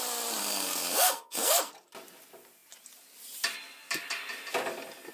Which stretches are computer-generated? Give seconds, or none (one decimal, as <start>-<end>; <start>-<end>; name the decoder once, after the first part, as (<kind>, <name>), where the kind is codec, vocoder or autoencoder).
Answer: 0.4-1.7 (codec, SNAC)